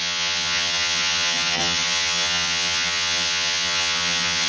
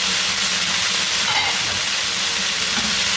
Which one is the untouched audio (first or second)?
second